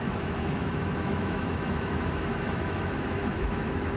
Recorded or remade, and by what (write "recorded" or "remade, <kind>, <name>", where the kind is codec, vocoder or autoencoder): remade, autoencoder, DAC-VAE